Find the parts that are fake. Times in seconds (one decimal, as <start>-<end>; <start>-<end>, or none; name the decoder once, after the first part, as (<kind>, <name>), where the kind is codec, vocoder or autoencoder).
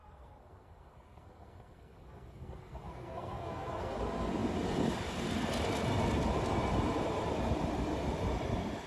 0.0-4.0 (codec, SNAC)